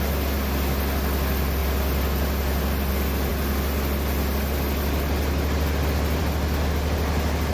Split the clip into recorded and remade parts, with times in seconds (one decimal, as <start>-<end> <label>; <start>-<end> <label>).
0.0-7.5 recorded